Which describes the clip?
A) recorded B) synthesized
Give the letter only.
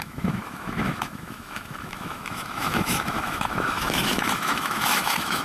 B